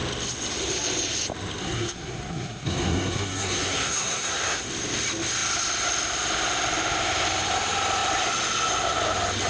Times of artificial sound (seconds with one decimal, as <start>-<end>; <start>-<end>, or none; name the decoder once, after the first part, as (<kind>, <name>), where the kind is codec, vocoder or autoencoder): 1.6-4.7 (codec, SNAC)